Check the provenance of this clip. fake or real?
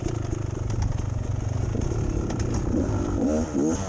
real